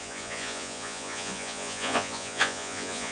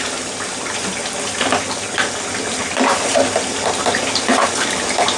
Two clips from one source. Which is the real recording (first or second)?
second